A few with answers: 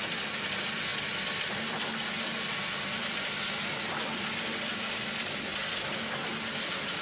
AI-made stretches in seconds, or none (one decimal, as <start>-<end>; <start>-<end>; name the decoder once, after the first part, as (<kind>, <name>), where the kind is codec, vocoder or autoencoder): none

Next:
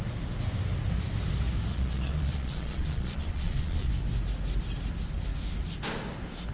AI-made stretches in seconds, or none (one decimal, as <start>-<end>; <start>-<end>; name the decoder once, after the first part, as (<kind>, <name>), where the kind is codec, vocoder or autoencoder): 1.7-3.9 (vocoder, Vocos)

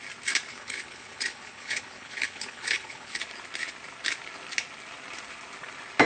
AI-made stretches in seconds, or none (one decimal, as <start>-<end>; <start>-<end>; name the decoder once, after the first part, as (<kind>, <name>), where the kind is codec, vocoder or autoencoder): 0.5-3.2 (codec, HILCodec)

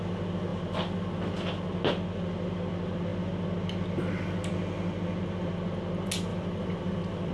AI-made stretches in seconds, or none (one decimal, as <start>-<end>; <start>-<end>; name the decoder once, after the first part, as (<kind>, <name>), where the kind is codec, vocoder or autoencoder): 6.3-7.3 (vocoder, BigVGAN v2)

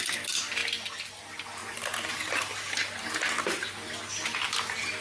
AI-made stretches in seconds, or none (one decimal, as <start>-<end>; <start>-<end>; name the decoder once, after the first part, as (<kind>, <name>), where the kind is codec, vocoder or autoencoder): none